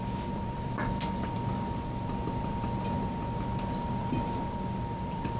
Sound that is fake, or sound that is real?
fake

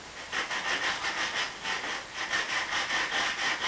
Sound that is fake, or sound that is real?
real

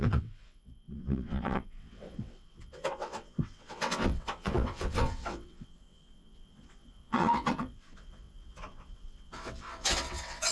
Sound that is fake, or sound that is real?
fake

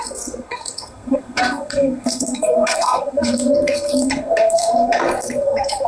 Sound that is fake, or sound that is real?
fake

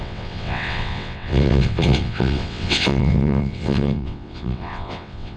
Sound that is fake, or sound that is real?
fake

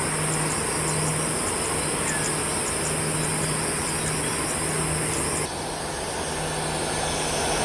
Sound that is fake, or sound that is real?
real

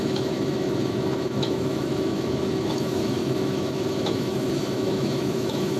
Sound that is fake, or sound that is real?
fake